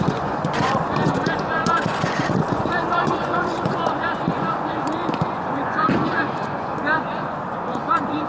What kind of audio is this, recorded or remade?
remade